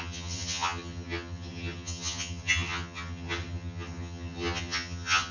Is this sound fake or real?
fake